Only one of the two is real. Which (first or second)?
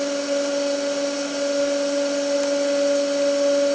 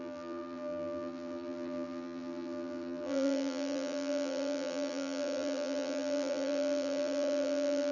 first